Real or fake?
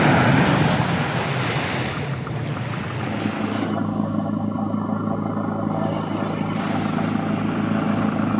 real